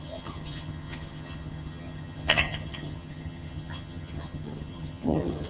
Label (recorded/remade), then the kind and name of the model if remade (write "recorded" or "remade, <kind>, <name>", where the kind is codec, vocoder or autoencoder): remade, vocoder, HiFi-GAN